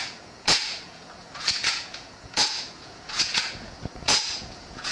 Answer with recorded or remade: remade